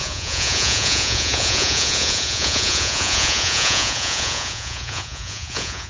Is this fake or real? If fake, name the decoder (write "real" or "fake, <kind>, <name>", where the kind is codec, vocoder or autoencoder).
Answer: fake, vocoder, Vocos